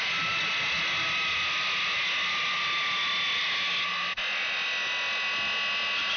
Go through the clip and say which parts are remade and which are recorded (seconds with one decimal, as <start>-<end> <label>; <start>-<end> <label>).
0.0-6.2 recorded